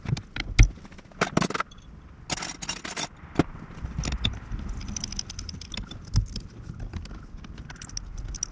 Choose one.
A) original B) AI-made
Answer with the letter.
A